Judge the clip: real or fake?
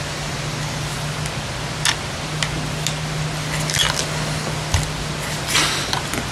real